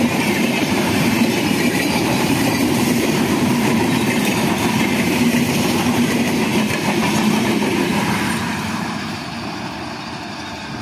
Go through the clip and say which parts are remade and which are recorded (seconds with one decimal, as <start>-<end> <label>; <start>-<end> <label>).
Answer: 0.0-6.5 remade; 6.5-7.4 recorded; 7.4-7.9 remade; 7.9-10.8 recorded